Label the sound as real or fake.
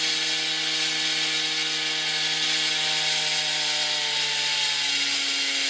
real